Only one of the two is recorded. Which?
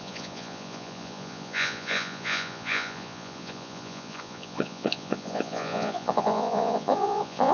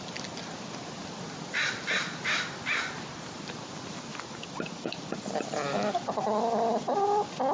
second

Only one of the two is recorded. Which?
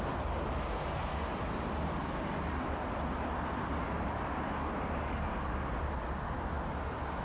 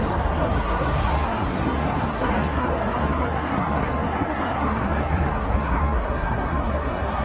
first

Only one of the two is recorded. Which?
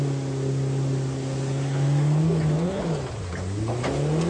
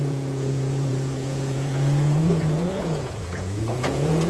first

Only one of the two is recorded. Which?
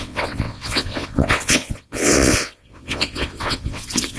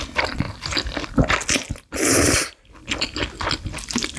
second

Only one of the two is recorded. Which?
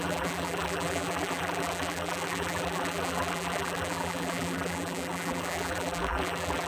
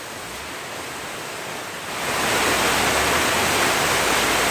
second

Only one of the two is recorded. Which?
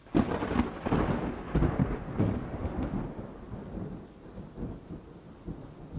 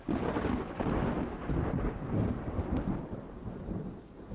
first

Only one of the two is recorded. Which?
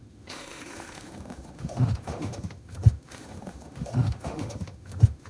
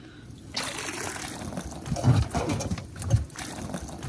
second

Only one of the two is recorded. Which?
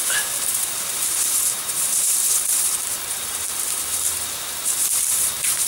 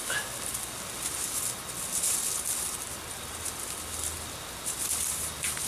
second